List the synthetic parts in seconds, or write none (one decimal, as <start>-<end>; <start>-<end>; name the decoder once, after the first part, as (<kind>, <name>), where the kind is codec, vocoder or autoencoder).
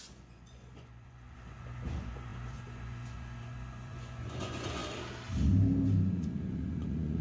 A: 0.0-4.8 (vocoder, Vocos); 6.1-7.2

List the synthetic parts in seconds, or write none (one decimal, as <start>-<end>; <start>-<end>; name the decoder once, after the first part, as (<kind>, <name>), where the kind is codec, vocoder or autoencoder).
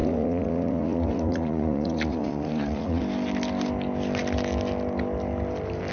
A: 0.0-3.0 (vocoder, Vocos)